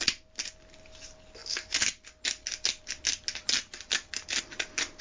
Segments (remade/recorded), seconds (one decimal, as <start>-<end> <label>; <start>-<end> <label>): 0.0-5.0 recorded